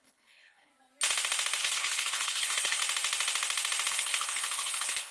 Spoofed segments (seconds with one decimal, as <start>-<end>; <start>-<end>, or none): 0.0-0.7; 1.6-2.8; 3.9-5.1